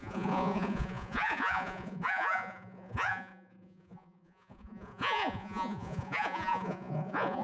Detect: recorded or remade remade